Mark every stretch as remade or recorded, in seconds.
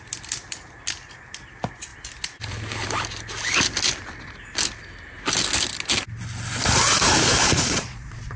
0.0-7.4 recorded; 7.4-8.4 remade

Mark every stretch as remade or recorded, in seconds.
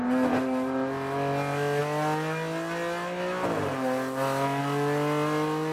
0.0-5.7 recorded